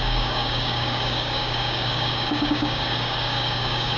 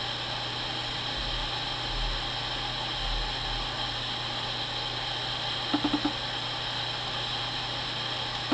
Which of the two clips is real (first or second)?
second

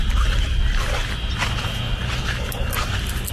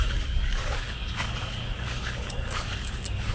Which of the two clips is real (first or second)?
first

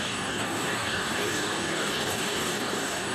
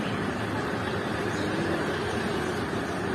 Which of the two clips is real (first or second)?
second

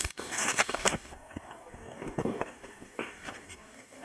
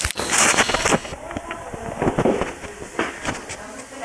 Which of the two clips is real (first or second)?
second